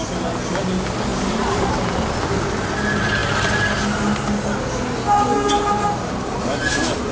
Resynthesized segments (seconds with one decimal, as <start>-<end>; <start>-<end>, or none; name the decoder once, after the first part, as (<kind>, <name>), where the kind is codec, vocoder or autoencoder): 1.1-1.9 (vocoder, BigVGAN v2)